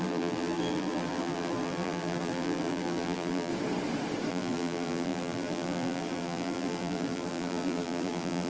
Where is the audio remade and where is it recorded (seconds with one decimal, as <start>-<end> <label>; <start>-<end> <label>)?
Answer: 0.0-3.5 remade; 3.5-4.3 recorded; 4.3-8.5 remade